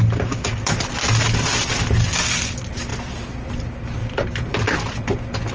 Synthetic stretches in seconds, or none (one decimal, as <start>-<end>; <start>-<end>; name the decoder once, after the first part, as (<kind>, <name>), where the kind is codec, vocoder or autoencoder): 4.0-4.6 (vocoder, BigVGAN v2)